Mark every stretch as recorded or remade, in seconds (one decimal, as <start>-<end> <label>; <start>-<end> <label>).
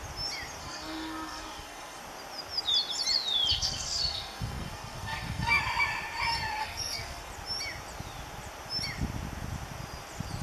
0.0-0.6 recorded; 0.6-2.0 remade; 2.0-3.5 recorded; 3.5-5.6 remade; 5.6-6.6 recorded; 6.6-7.3 remade; 7.3-10.4 recorded